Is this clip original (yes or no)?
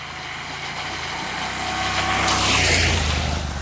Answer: yes